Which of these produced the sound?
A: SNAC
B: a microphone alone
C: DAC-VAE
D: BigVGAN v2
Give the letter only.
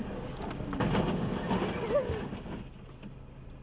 B